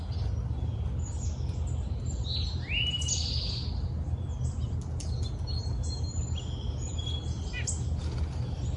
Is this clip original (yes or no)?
yes